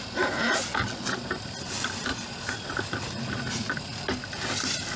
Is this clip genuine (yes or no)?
yes